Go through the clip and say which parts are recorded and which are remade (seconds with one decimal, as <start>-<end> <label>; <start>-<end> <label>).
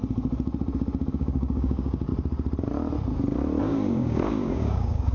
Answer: 0.0-1.1 recorded; 1.1-2.1 remade; 2.1-3.6 recorded; 3.6-5.1 remade